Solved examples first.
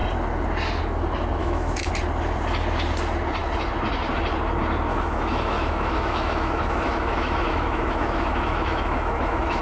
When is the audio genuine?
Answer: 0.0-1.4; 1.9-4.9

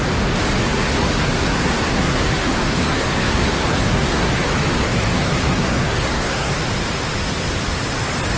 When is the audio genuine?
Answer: 0.0-0.6; 4.3-4.7; 6.5-8.4

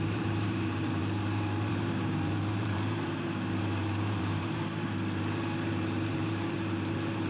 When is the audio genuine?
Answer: none